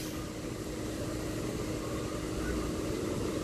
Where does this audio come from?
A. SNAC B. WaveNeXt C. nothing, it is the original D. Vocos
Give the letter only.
C